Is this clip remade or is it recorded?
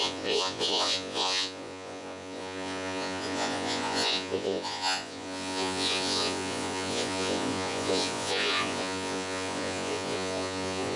remade